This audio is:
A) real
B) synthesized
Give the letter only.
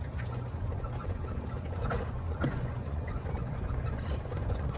B